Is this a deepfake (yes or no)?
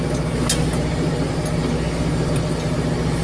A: no